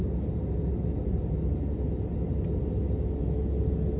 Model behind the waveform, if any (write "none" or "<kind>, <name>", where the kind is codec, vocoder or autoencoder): none